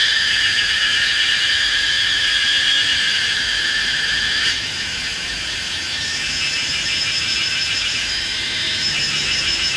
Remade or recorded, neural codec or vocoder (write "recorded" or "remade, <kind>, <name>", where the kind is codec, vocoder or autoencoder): remade, autoencoder, DAC-VAE